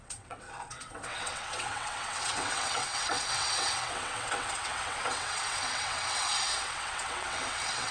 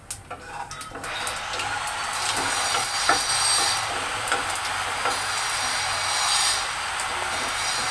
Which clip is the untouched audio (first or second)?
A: second